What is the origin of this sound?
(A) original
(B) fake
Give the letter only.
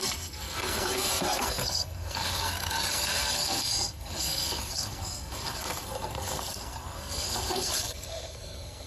B